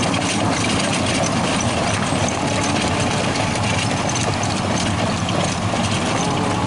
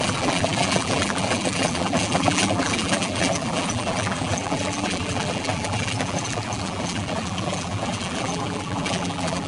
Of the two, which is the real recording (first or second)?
first